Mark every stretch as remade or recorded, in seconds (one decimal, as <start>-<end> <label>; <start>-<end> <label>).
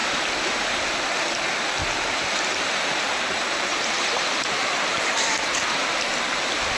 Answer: 0.0-1.8 recorded; 1.8-5.9 remade; 5.9-6.8 recorded